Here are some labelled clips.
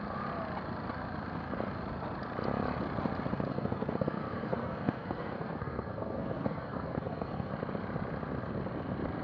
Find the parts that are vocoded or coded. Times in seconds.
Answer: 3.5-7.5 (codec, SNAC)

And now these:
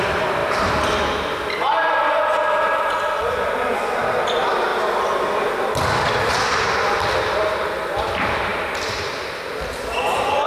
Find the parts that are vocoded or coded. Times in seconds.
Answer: none

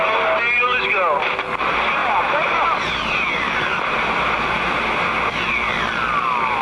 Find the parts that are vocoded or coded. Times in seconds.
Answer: 2.0-4.0 (vocoder, BigVGAN v2)

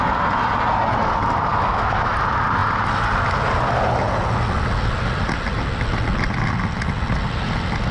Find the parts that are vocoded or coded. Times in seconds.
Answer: 1.5-2.1 (autoencoder, DAC-VAE)